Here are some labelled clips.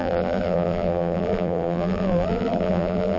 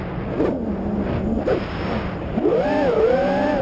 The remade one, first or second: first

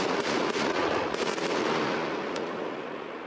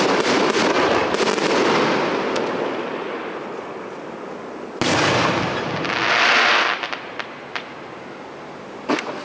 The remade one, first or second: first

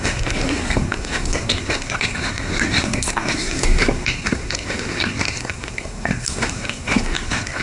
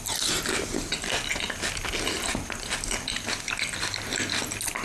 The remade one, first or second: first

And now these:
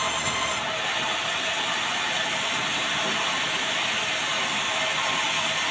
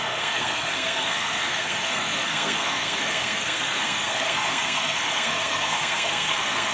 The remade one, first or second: second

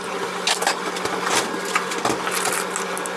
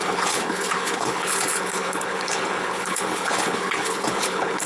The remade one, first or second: second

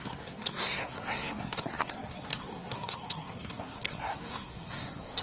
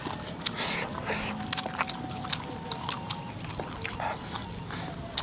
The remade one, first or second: first